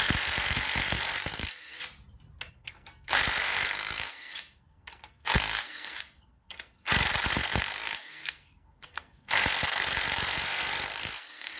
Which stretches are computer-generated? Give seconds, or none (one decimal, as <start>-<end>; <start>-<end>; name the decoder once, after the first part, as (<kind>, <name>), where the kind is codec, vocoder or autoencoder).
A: 0.0-1.8 (codec, SNAC); 2.5-11.6